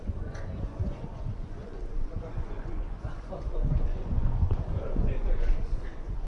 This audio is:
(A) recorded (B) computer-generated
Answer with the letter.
B